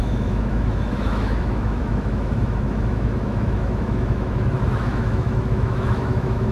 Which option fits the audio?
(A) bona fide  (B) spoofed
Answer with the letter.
B